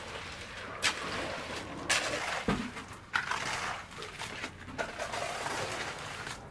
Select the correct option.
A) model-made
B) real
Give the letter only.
B